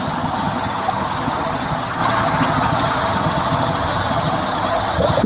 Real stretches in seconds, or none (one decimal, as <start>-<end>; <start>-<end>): none